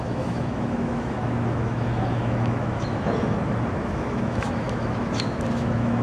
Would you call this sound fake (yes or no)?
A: yes